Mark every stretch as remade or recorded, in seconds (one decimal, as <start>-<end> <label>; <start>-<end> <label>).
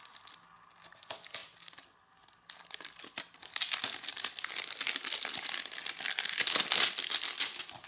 0.0-5.8 recorded; 5.8-7.5 remade; 7.5-7.9 recorded